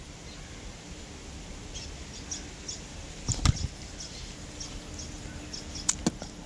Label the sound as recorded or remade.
recorded